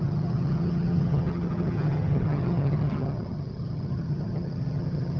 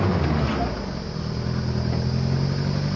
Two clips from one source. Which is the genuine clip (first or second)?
second